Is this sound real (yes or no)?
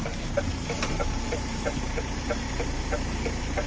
no